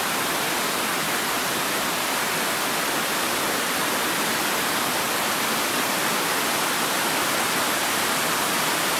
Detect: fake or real real